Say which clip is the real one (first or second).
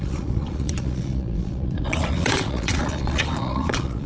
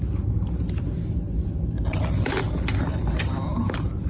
second